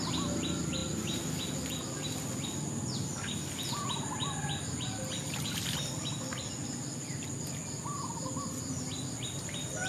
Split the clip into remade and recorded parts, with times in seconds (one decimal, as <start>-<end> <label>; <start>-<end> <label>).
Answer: 0.0-9.9 recorded